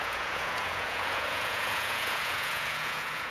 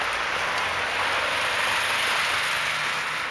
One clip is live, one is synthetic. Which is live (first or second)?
second